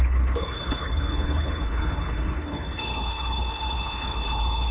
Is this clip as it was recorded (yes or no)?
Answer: no